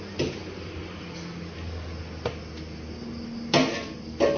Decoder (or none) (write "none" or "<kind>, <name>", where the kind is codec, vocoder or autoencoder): none